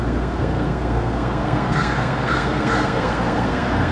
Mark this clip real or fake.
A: fake